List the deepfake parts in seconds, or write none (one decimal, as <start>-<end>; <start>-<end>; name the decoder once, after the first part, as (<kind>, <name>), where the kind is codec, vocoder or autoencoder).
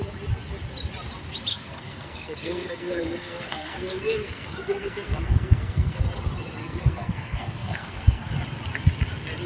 1.5-6.0 (codec, SNAC); 6.6-8.3